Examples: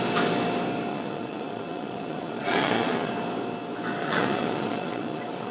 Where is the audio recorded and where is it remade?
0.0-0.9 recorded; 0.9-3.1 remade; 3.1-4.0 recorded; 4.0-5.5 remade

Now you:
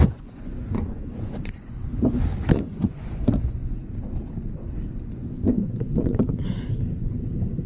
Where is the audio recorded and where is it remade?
0.0-1.9 remade; 1.9-2.5 recorded; 2.5-3.8 remade; 3.8-4.9 recorded; 4.9-7.7 remade

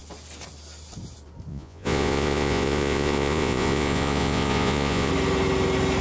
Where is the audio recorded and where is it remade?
0.0-1.5 recorded; 1.5-5.1 remade; 5.1-6.0 recorded

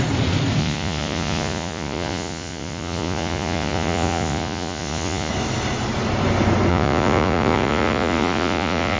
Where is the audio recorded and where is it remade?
0.0-0.6 recorded; 0.6-5.3 remade; 5.3-6.7 recorded; 6.7-9.0 remade

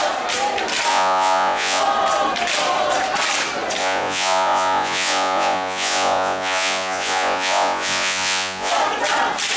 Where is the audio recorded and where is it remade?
0.0-0.9 recorded; 0.9-1.8 remade; 1.8-3.8 recorded; 3.8-8.7 remade; 8.7-9.6 recorded

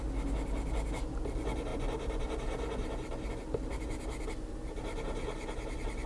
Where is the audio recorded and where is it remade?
0.0-6.1 recorded